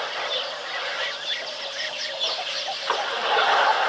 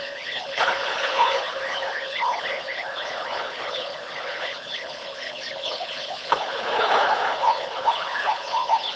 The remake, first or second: second